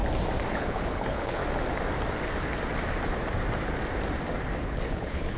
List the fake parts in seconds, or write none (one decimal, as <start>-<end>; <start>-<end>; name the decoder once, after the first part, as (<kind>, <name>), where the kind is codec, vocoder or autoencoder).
0.5-1.4 (codec, HILCodec); 4.6-5.4